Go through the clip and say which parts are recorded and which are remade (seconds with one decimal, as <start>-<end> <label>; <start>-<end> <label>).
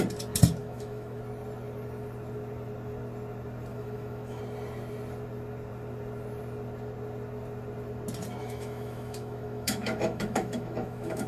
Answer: 0.0-0.6 recorded; 0.6-1.2 remade; 1.2-3.7 recorded; 3.7-4.4 remade; 4.4-8.4 recorded; 8.4-11.3 remade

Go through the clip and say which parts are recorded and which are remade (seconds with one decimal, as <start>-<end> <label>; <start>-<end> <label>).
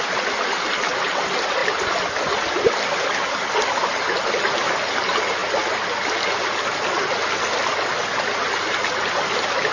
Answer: 0.0-9.7 recorded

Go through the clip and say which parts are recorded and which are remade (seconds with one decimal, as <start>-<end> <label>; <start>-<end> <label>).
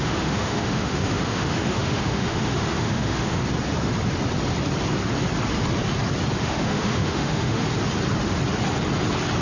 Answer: 0.0-3.4 remade; 3.4-6.4 recorded; 6.4-7.6 remade; 7.6-9.4 recorded